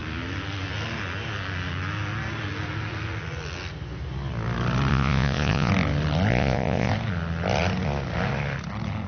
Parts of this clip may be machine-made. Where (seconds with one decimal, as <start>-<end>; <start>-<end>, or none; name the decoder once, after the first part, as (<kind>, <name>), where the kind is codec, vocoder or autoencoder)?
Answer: 4.9-5.7 (vocoder, Vocos); 6.3-6.9